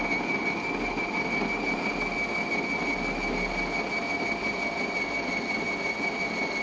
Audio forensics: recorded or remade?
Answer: recorded